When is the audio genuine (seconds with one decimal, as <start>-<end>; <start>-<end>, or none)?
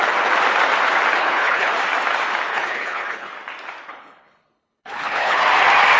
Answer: 0.0-1.2; 1.7-2.5; 3.3-3.9; 5.4-6.0